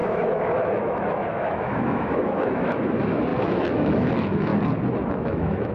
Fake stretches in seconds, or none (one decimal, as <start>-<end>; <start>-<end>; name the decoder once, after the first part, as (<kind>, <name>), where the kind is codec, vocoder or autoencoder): 0.0-4.5 (autoencoder, DAC-VAE); 5.1-5.7